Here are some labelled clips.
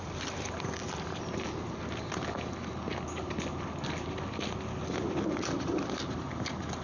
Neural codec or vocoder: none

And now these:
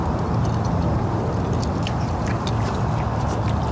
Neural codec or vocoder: none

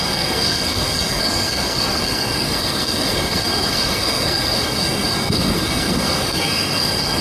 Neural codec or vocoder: codec, SNAC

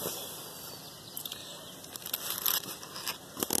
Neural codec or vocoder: none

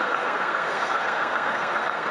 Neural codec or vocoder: codec, SNAC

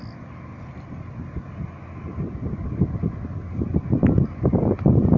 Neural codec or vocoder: none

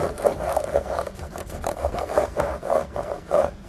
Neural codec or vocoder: codec, SNAC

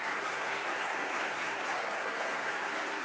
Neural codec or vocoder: codec, SNAC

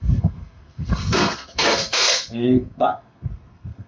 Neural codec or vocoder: codec, SNAC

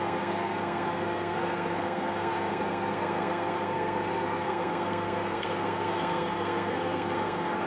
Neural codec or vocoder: codec, SNAC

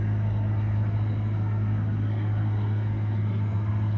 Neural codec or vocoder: codec, SNAC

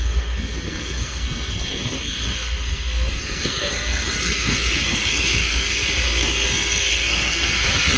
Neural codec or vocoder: codec, SNAC